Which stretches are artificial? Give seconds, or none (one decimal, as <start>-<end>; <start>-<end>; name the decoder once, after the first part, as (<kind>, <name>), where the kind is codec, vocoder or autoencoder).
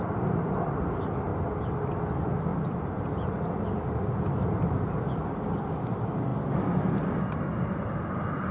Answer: none